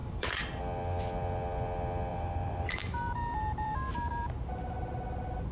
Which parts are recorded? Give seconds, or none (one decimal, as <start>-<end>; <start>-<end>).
0.6-2.1; 4.5-5.5